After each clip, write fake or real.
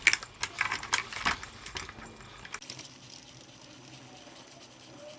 real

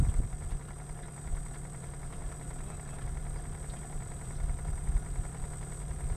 real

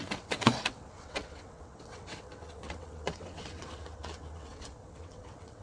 fake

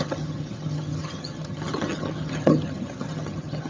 fake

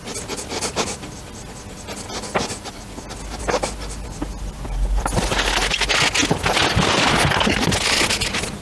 real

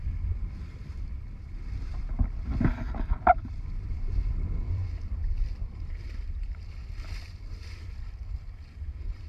fake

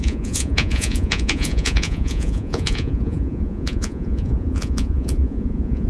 fake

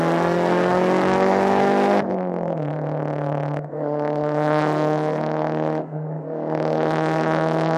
fake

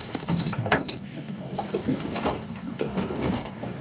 fake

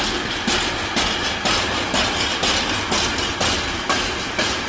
real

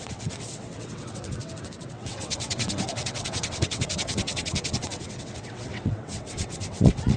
fake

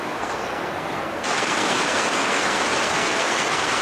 fake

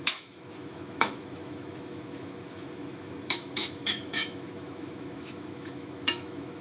fake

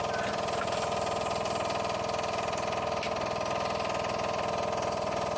real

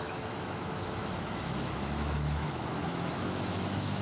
fake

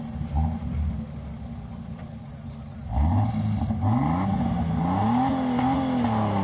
real